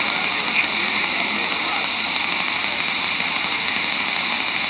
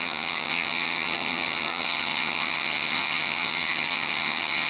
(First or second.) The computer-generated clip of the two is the second